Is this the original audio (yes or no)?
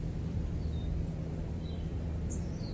no